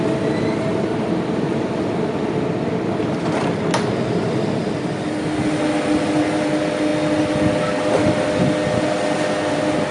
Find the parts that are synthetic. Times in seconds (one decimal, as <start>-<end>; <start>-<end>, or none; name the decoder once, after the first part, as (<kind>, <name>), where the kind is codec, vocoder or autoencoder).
none